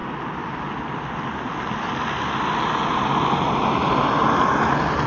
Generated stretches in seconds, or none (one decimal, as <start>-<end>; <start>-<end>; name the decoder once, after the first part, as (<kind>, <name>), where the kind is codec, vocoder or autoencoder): none